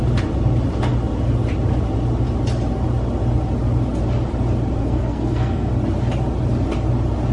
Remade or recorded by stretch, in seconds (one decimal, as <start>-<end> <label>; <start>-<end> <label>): 0.0-4.8 recorded; 4.8-5.7 remade; 5.7-7.3 recorded